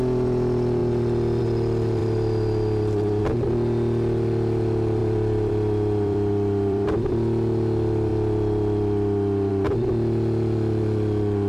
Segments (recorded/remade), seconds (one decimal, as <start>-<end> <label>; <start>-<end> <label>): 0.0-2.0 recorded; 2.0-3.2 remade; 3.2-5.0 recorded; 5.0-7.1 remade; 7.1-11.5 recorded